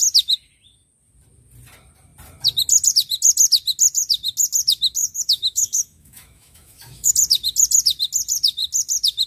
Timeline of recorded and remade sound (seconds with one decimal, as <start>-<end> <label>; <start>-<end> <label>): 0.0-5.0 recorded; 5.0-7.1 remade; 7.1-9.3 recorded